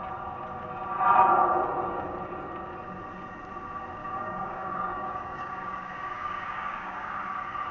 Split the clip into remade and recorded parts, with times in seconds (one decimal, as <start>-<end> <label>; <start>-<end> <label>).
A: 0.0-4.0 recorded; 4.0-7.2 remade; 7.2-7.7 recorded